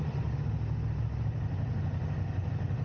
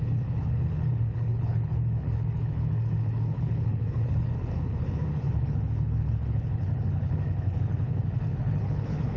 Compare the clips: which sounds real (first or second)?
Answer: first